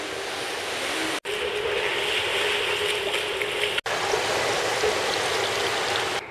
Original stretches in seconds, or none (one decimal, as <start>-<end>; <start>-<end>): 0.0-6.3